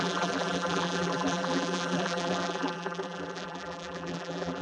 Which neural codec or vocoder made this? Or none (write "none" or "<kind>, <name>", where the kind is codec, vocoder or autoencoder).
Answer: vocoder, BigVGAN v2